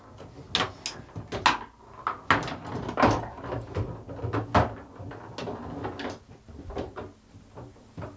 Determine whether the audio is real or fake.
real